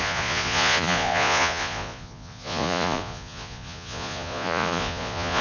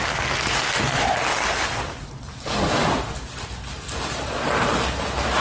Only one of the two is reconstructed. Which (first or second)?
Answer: first